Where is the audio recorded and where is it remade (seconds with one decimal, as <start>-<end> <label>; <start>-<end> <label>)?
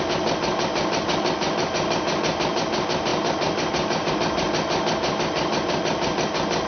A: 0.0-6.7 recorded